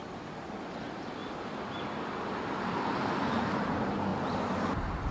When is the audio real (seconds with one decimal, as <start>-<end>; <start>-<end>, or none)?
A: 0.0-5.1